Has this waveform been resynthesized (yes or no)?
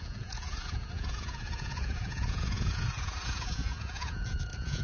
yes